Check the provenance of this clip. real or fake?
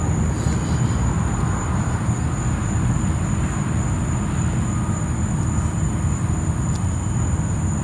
real